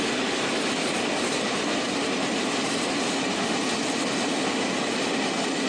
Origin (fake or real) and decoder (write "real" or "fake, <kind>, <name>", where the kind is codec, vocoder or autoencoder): real